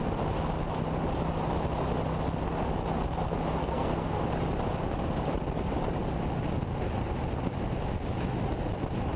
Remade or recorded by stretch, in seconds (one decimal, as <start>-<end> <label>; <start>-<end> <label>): 0.0-3.6 recorded; 3.6-4.2 remade; 4.2-9.2 recorded